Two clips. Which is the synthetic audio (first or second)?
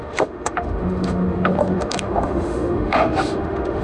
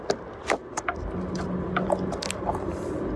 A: first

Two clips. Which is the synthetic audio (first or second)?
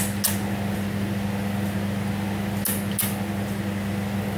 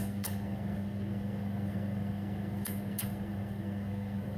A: second